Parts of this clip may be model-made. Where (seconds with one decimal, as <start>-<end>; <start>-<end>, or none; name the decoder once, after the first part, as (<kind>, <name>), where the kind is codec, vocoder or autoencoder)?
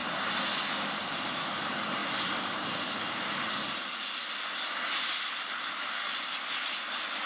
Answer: none